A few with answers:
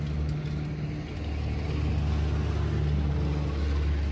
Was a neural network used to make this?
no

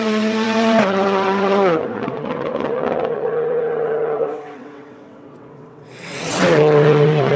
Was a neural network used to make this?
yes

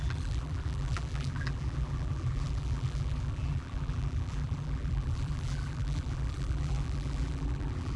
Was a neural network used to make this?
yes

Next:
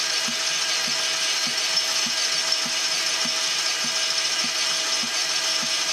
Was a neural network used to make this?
no